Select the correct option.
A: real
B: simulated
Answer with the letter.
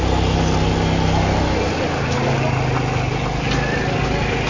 A